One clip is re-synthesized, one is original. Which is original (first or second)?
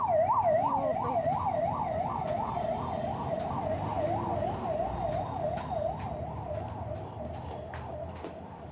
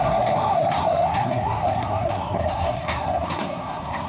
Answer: first